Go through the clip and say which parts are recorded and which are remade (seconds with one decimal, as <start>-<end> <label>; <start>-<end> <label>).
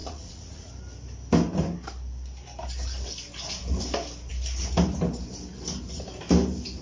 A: 0.0-0.7 remade; 0.7-6.8 recorded